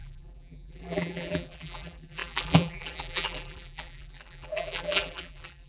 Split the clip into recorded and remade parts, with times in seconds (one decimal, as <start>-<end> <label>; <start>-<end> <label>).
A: 0.0-5.7 remade